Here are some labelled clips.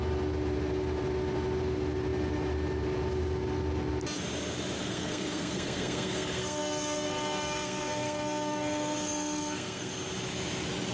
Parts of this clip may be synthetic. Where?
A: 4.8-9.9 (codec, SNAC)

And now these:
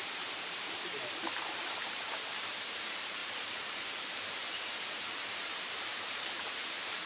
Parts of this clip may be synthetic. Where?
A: 0.0-7.1 (vocoder, BigVGAN v2)

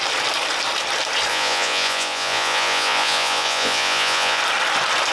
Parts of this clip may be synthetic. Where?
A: 1.3-4.4 (vocoder, Vocos)

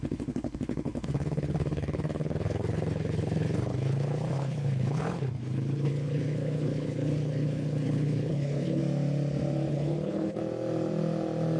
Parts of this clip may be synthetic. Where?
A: 0.0-8.8 (codec, HILCodec); 9.7-10.4

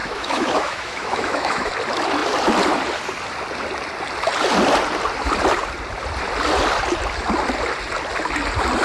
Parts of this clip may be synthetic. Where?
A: 0.0-1.7 (autoencoder, DAC-VAE)

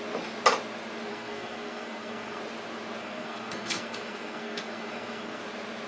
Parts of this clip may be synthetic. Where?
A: 1.1-2.4 (codec, SNAC); 3.0-5.4

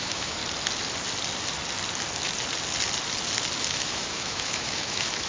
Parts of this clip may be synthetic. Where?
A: 0.0-0.4 (autoencoder, DAC-VAE); 3.6-5.3

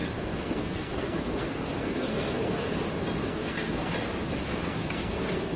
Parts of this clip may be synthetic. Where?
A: 0.0-2.7 (codec, SNAC); 3.2-3.9; 4.4-5.6